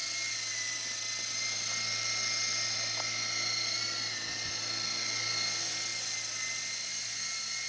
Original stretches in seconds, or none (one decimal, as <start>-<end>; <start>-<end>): 0.0-7.7